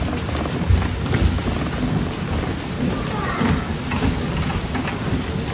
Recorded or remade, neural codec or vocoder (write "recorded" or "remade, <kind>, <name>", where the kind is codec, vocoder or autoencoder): recorded